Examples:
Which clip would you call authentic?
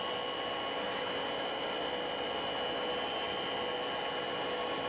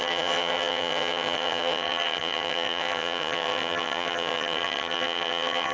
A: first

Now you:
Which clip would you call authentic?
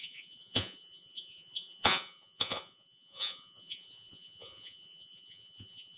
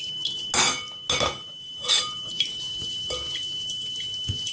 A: second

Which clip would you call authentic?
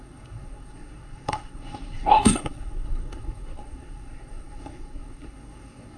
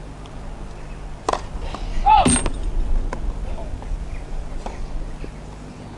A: second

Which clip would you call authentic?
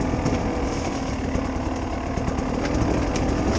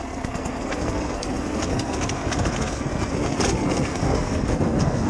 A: first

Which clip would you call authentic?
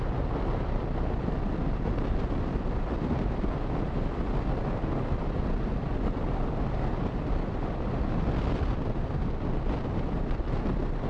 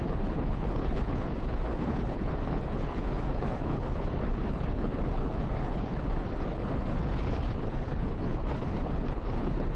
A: first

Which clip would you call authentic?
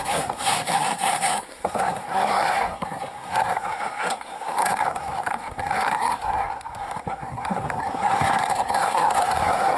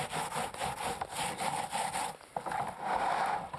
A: second